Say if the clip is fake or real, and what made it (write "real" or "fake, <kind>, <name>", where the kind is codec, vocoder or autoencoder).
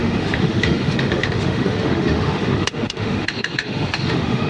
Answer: fake, autoencoder, DAC-VAE